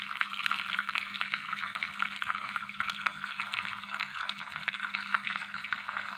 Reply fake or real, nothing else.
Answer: fake